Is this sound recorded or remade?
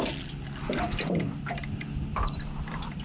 recorded